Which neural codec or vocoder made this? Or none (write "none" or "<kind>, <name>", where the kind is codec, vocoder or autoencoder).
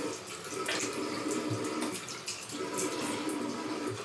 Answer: none